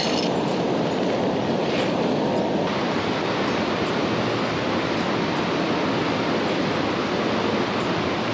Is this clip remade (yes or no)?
no